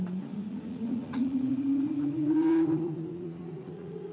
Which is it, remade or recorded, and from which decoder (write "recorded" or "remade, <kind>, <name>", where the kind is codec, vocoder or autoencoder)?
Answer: remade, vocoder, Vocos